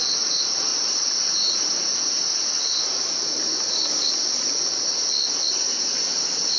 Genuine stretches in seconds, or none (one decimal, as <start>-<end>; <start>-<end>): 0.7-1.2; 2.3-6.6